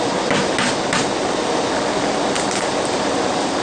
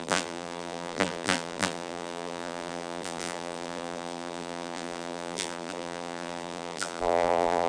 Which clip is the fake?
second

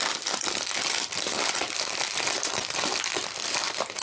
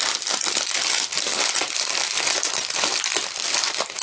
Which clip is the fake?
first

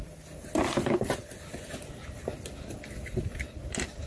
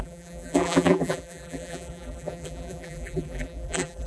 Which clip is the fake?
second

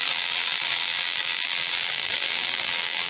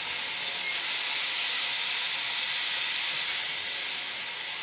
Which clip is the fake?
first